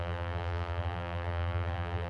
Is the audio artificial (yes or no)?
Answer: yes